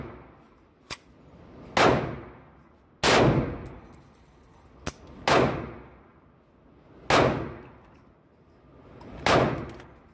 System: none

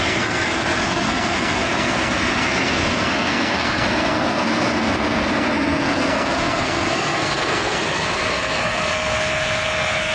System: codec, SNAC